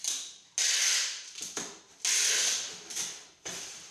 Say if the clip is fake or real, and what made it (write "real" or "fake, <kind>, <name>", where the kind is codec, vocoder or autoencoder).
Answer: real